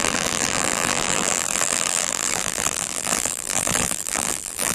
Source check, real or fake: fake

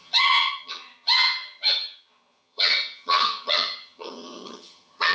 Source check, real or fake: fake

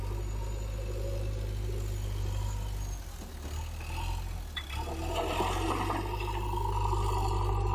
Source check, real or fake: real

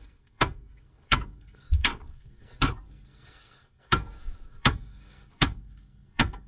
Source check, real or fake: fake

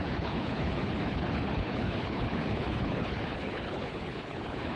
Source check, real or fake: fake